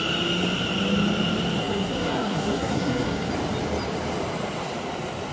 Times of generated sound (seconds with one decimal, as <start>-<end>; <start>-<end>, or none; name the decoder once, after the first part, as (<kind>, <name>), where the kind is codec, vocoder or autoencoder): 1.6-3.3 (codec, SNAC)